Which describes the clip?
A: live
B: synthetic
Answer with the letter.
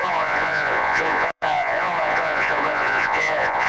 B